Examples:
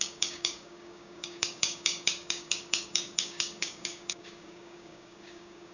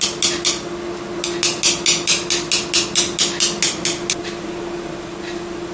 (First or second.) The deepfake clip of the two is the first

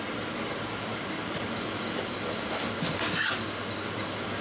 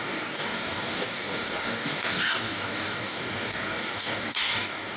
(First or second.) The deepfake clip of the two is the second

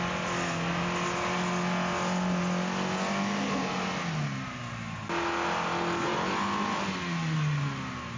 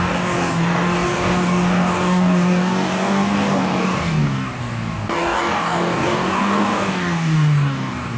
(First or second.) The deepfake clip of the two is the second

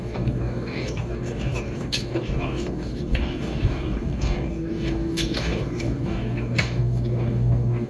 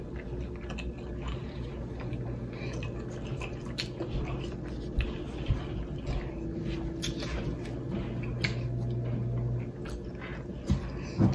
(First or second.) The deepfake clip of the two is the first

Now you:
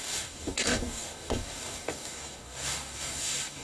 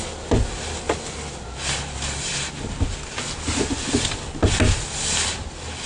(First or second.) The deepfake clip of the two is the first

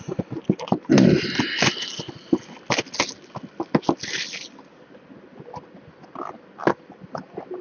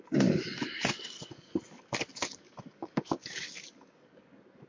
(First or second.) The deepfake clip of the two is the second